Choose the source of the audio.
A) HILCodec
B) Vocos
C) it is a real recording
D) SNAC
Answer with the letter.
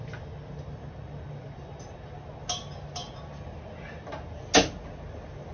C